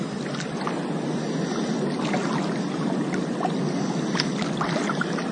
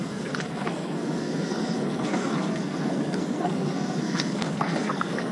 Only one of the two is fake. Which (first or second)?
second